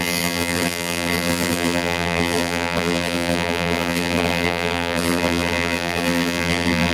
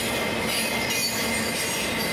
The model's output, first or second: first